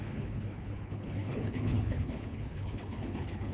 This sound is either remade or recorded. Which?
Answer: remade